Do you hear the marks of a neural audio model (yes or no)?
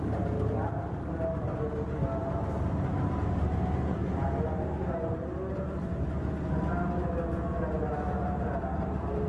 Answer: no